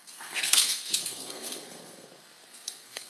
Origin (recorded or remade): remade